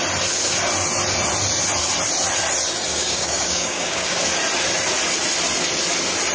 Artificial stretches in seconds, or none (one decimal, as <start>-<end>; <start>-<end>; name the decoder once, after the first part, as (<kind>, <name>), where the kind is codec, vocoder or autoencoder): 2.9-4.2 (codec, DAC)